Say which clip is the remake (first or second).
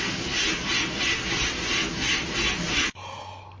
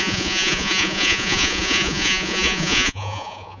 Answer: second